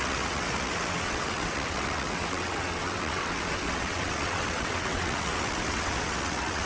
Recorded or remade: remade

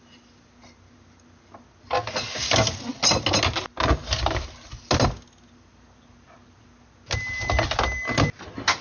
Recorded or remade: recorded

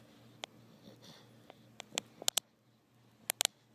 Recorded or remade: recorded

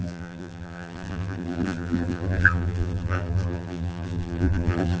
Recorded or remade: remade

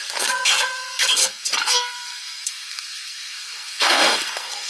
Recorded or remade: remade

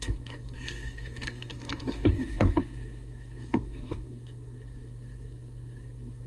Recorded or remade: remade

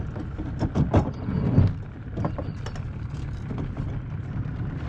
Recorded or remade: recorded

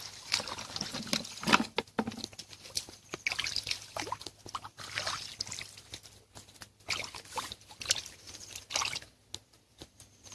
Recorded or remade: recorded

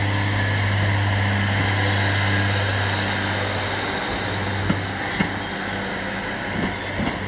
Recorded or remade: recorded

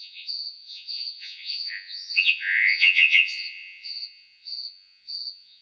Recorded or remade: remade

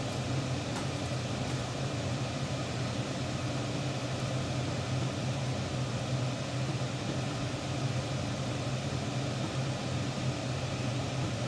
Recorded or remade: recorded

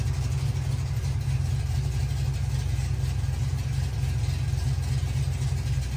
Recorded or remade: recorded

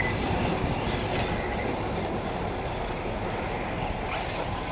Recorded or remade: recorded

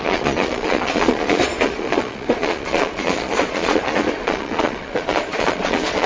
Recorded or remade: remade